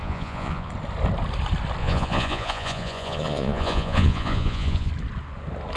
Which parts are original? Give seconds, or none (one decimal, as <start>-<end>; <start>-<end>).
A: 0.7-1.8; 4.9-5.8